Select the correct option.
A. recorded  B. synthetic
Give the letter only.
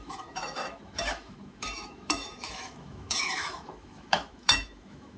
B